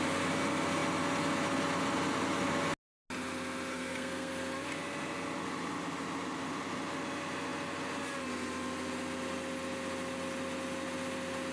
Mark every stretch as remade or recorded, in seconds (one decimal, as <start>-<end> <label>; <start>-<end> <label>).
0.0-3.7 recorded; 3.7-4.3 remade; 4.3-11.5 recorded